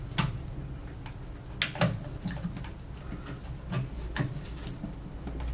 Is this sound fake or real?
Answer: real